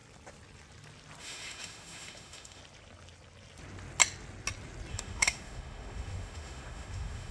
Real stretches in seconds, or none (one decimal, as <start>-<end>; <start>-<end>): 0.0-1.2; 2.6-4.9